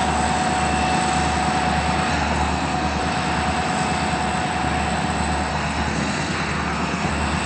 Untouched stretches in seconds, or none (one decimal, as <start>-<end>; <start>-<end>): 0.0-2.1; 3.0-5.5; 7.1-7.5